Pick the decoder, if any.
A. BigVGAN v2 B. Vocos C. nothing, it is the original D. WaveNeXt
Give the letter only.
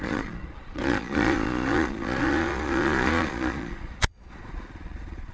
B